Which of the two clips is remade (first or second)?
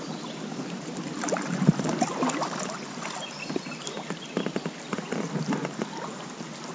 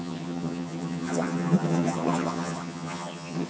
second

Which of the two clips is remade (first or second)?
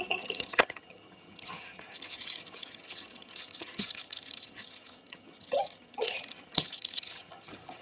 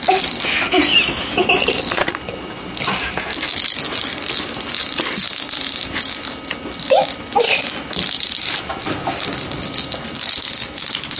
first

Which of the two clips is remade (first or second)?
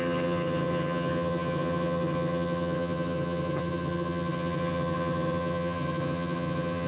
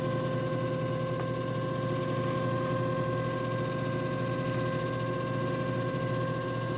first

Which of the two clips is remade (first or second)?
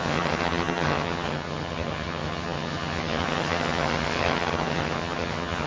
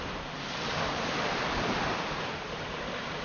first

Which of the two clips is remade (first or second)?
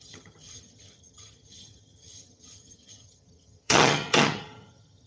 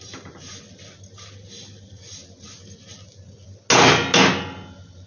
first